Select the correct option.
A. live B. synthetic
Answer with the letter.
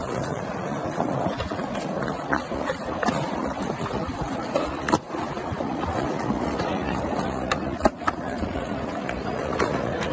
B